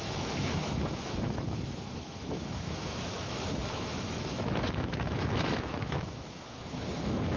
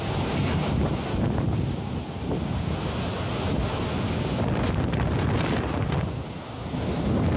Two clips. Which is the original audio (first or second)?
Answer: second